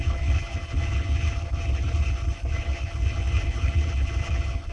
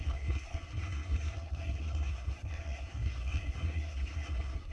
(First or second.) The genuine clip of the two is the first